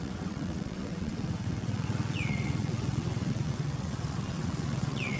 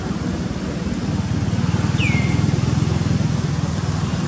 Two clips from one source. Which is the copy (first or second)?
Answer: first